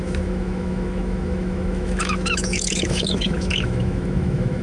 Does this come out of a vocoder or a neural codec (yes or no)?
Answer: yes